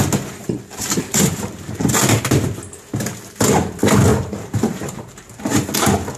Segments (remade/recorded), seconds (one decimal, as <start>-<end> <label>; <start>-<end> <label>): 0.0-0.4 recorded; 0.4-2.1 remade; 2.1-4.1 recorded; 4.1-5.7 remade; 5.7-6.2 recorded